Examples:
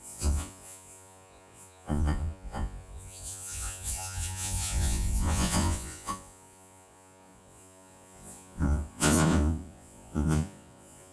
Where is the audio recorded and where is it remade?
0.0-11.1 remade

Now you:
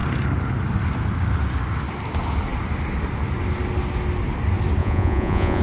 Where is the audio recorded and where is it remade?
0.0-4.8 recorded; 4.8-5.6 remade

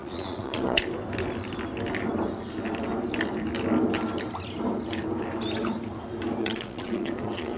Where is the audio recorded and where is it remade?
0.0-0.8 remade; 0.8-6.4 recorded; 6.4-7.6 remade